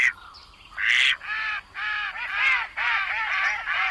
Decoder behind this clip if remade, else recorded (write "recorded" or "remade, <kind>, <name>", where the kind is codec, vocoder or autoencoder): recorded